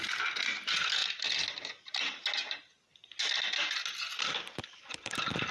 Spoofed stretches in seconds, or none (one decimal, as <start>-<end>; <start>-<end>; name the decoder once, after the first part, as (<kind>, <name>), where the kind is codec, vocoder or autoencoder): none